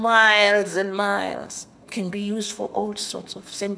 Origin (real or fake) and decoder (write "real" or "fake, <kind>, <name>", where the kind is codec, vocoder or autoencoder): fake, codec, SNAC